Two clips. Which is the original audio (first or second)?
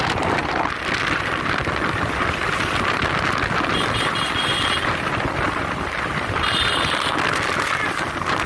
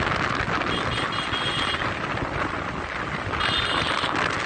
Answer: second